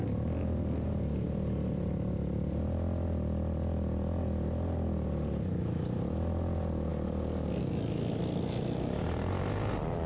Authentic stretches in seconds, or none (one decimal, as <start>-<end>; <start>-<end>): 0.0-10.1